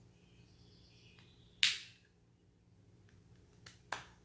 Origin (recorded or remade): recorded